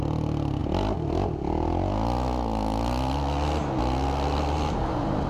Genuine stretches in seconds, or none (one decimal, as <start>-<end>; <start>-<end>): 0.0-5.3